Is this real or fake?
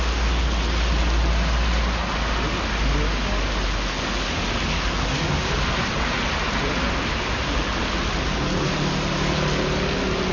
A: real